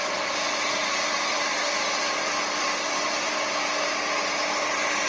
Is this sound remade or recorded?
recorded